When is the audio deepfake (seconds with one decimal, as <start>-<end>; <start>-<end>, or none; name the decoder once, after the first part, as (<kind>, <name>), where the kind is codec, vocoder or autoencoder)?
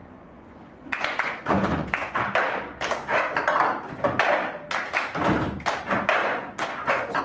0.0-2.2 (vocoder, Vocos); 6.2-7.2